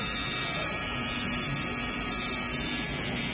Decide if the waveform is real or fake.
real